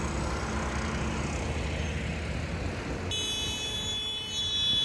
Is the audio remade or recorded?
recorded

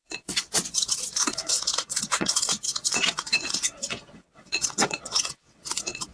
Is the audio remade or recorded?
remade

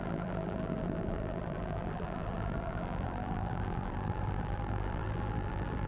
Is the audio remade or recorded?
remade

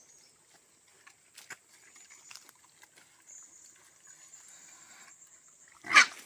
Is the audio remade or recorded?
recorded